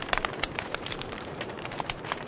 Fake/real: fake